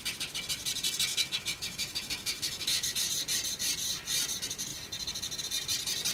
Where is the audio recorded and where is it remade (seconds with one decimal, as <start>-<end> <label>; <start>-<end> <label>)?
0.0-1.1 recorded; 1.1-3.1 remade; 3.1-6.1 recorded